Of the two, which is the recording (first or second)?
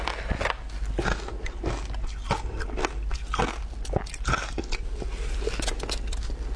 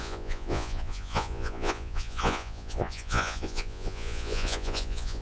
first